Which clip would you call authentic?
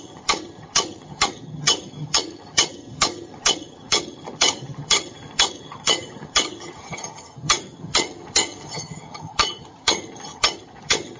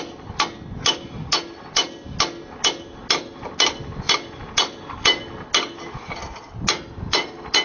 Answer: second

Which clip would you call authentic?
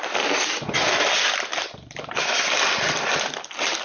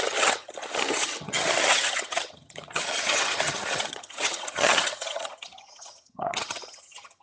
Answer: first